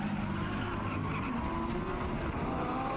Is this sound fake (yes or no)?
no